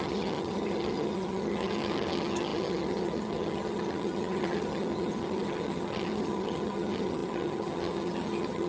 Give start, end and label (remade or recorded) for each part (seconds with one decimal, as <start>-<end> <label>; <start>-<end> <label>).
0.0-8.7 remade